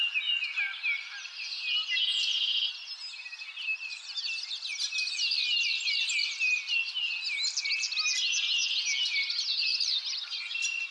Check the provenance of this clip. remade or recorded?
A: recorded